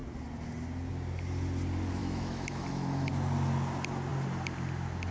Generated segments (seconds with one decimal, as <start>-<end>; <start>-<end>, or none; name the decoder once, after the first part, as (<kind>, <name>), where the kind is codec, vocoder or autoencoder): 2.0-3.1 (autoencoder, DAC-VAE)